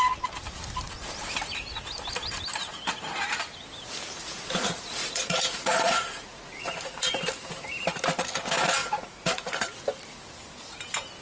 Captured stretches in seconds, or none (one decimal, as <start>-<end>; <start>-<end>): 0.0-4.2; 7.2-8.8; 9.5-11.2